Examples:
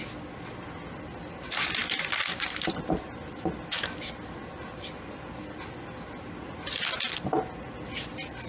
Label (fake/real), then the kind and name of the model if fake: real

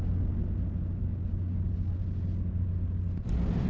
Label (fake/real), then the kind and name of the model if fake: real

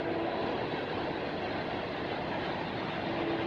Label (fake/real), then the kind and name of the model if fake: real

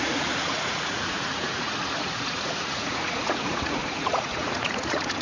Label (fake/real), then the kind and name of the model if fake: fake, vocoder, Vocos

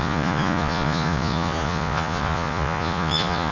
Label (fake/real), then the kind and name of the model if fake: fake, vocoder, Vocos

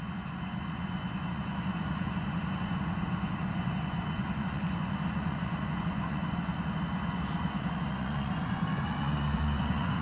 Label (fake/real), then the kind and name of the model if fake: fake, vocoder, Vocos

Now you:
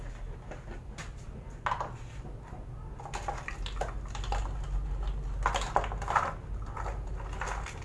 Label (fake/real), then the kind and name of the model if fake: real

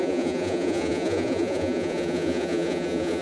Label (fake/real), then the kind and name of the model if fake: fake, vocoder, Vocos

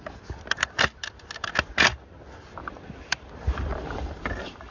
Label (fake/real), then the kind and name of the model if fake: real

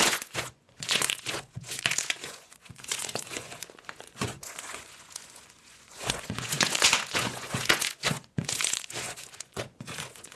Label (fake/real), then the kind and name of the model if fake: fake, vocoder, Vocos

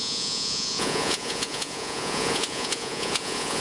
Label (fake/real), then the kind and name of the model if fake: fake, vocoder, Vocos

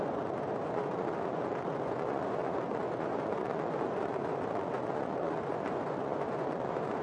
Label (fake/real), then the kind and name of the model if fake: fake, vocoder, Vocos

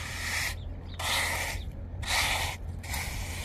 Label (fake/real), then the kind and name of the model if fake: real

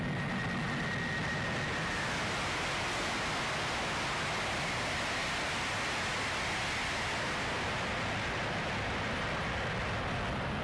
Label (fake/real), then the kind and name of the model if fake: real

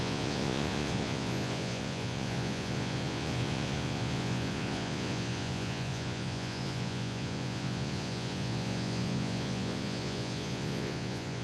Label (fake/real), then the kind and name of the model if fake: fake, vocoder, Vocos